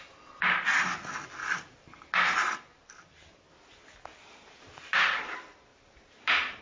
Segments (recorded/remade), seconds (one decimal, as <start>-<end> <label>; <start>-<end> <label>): 0.0-6.6 recorded